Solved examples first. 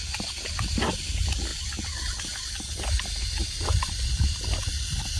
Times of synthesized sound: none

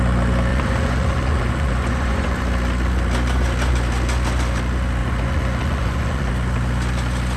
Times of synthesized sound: 0.5-2.4 (vocoder, Vocos); 5.0-6.3

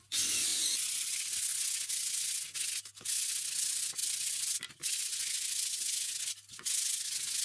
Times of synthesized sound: none

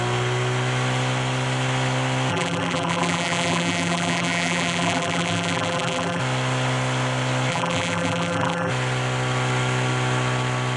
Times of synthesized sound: 2.3-6.2 (vocoder, BigVGAN v2); 7.5-8.7

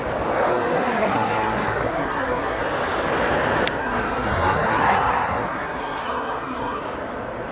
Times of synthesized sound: 0.5-2.6 (codec, SNAC); 3.8-6.8

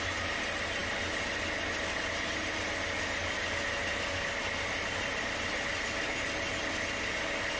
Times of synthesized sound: none

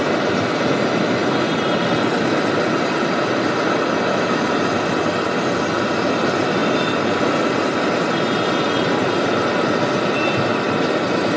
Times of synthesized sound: none

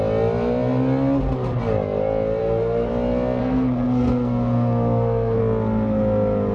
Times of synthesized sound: 2.4-2.9 (codec, SNAC); 3.4-5.4